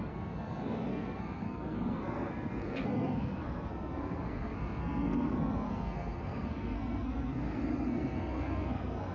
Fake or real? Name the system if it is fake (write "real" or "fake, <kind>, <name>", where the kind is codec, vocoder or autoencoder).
fake, codec, SNAC